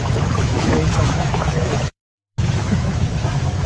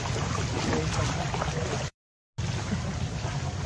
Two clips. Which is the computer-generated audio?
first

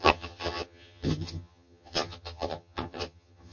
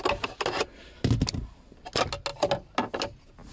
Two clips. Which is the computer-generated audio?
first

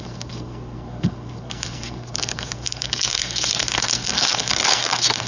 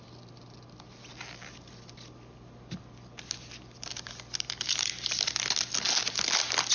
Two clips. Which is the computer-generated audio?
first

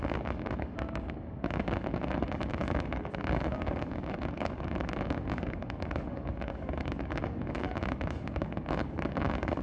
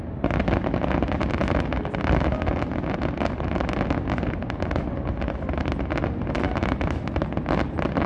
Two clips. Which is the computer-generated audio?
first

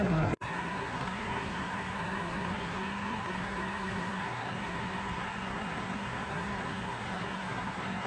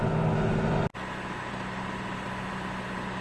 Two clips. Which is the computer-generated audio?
first